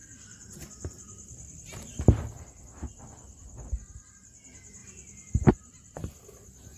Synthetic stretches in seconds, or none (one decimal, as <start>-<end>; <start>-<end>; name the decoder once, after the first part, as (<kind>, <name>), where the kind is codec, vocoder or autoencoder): none